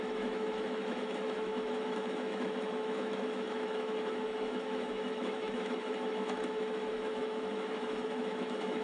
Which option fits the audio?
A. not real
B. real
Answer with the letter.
A